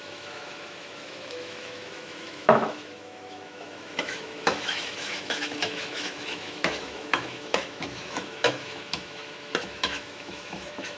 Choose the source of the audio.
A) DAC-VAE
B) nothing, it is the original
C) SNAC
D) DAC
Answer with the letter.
A